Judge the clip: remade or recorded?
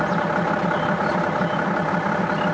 recorded